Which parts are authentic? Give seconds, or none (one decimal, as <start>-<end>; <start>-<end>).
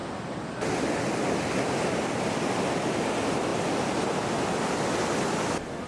0.0-5.9